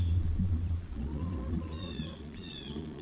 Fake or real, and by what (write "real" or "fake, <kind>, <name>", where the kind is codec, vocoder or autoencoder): fake, vocoder, Vocos